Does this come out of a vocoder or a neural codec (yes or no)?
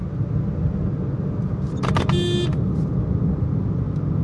no